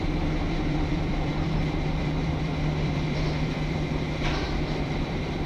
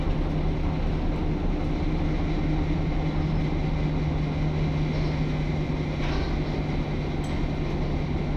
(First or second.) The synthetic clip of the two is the first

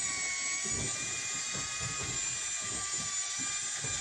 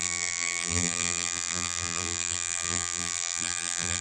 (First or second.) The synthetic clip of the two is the second